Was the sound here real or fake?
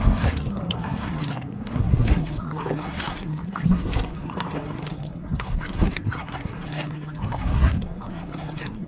fake